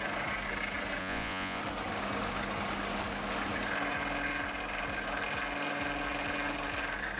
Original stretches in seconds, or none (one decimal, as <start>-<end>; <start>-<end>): 0.0-1.0; 1.6-7.2